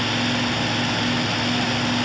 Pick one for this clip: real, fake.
real